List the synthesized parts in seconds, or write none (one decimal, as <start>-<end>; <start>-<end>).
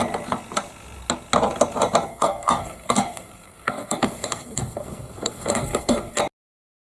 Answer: 2.1-6.2